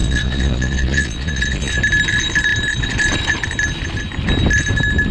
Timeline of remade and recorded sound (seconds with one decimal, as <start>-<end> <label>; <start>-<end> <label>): 0.0-1.8 remade; 1.8-5.1 recorded